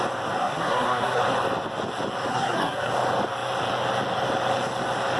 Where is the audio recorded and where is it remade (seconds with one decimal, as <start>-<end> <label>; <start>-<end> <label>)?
0.0-0.4 recorded; 0.4-1.2 remade; 1.2-2.3 recorded; 2.3-2.9 remade; 2.9-5.2 recorded